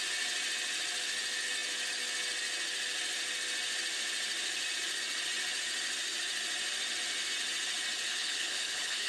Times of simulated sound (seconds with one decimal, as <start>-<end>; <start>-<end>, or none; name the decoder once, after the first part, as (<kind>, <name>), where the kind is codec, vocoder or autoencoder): 8.1-9.1 (codec, HILCodec)